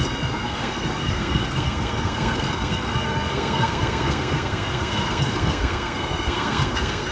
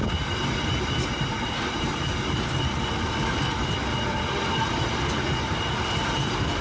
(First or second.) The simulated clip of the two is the first